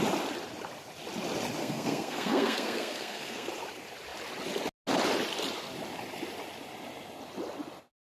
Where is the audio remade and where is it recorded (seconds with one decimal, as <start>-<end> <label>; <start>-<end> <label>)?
0.0-1.6 recorded; 1.6-3.5 remade; 3.5-8.1 recorded